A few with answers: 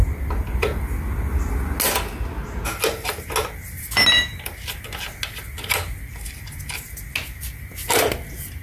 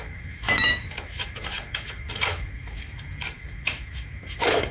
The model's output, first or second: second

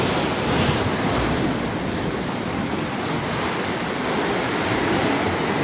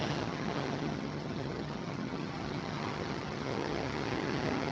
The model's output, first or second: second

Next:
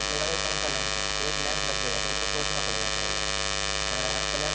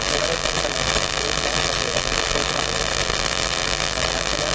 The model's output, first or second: second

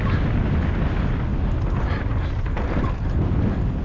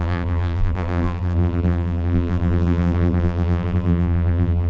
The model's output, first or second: second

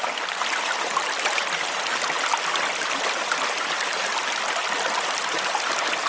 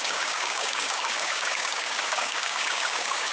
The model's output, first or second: second